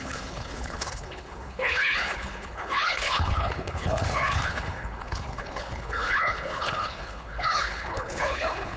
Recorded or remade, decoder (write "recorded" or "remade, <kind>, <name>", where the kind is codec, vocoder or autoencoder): remade, codec, HILCodec